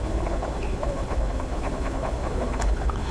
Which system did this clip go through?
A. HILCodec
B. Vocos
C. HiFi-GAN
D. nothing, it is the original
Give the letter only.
A